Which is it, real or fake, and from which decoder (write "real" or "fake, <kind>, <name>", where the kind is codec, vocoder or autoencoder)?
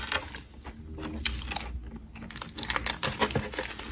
real